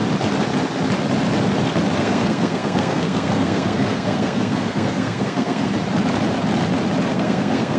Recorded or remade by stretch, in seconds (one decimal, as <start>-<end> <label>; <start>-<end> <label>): 0.0-2.0 recorded; 2.0-5.7 remade; 5.7-7.1 recorded; 7.1-7.8 remade